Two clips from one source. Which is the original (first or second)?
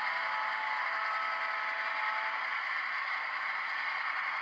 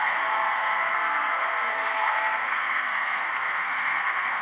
first